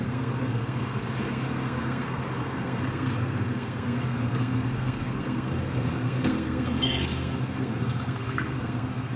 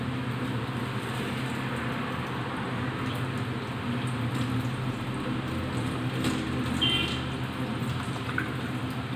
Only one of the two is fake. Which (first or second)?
first